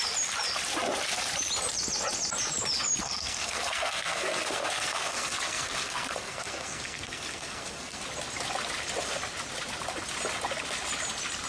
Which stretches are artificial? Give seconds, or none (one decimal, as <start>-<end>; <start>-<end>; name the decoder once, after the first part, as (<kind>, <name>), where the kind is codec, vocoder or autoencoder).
3.0-8.0 (codec, SNAC)